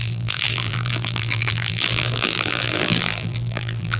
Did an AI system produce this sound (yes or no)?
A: yes